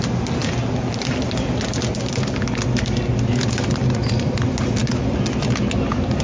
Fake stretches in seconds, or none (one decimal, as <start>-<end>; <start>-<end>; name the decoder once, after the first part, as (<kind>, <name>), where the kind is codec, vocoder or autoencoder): none